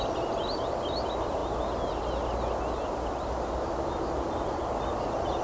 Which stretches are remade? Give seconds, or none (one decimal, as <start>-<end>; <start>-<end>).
none